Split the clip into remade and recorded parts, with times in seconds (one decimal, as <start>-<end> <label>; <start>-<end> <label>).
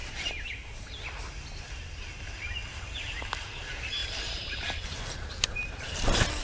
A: 0.0-0.9 remade; 0.9-4.0 recorded; 4.0-6.4 remade